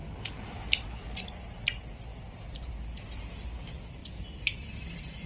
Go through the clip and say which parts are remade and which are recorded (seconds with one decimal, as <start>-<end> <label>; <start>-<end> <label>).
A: 0.0-2.1 recorded; 2.1-2.7 remade; 2.7-4.0 recorded; 4.0-5.3 remade